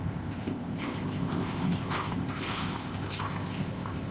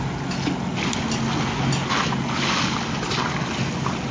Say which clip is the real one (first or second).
second